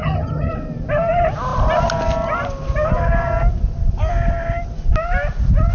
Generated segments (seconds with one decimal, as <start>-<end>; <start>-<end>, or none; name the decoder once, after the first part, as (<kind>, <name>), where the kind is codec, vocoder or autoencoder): 0.0-0.5 (vocoder, HiFi-GAN)